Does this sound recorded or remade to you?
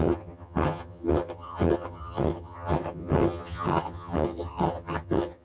remade